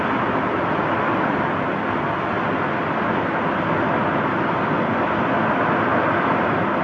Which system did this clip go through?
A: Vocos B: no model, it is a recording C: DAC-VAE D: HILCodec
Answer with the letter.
B